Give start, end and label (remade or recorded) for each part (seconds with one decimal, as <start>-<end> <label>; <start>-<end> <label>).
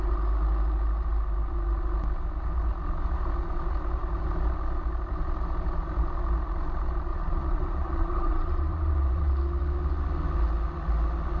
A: 0.0-7.1 recorded; 7.1-9.3 remade; 9.3-11.4 recorded